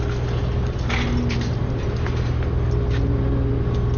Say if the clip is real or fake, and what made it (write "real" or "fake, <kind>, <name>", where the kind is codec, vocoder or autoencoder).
real